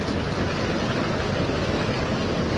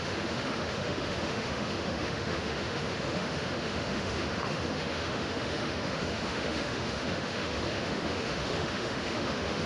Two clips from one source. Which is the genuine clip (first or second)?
first